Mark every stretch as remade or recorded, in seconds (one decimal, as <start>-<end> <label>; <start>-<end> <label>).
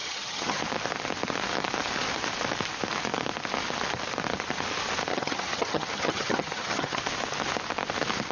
0.0-0.6 remade; 0.6-5.1 recorded; 5.1-7.0 remade; 7.0-8.3 recorded